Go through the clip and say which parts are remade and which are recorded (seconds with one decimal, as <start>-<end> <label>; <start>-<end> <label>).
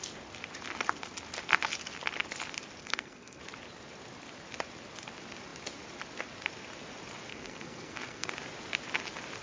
0.0-2.8 recorded; 2.8-3.4 remade; 3.4-7.3 recorded; 7.3-8.3 remade; 8.3-9.4 recorded